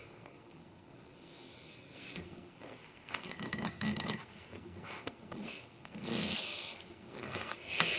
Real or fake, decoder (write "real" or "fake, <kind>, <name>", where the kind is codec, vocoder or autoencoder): fake, codec, SNAC